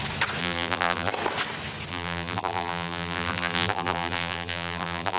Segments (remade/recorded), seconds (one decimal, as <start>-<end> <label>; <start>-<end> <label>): 0.0-0.4 recorded; 0.4-1.1 remade; 1.1-1.9 recorded; 1.9-5.2 remade